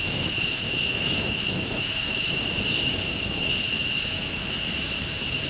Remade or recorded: remade